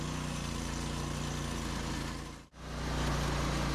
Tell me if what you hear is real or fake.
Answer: real